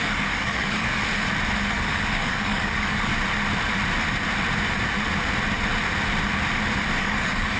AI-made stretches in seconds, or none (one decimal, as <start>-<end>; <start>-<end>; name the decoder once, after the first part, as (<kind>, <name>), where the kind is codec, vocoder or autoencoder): 0.0-1.0 (codec, DAC); 1.7-3.1; 7.0-7.6

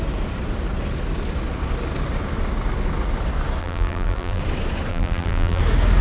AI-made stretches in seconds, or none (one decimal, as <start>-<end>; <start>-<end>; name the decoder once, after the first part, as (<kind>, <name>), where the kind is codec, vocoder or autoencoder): 3.6-4.4 (vocoder, BigVGAN v2); 4.9-5.6

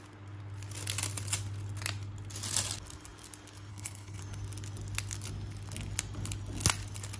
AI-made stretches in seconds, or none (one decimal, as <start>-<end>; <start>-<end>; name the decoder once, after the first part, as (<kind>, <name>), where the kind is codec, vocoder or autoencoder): 3.7-4.2 (codec, HILCodec)